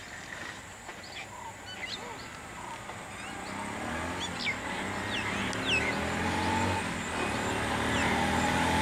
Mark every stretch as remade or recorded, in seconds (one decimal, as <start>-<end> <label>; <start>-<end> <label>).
0.0-8.8 recorded